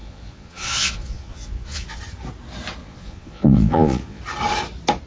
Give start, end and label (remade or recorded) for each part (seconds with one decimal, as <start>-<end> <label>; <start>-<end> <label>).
0.0-2.0 remade; 2.0-2.8 recorded; 2.8-4.2 remade; 4.2-5.1 recorded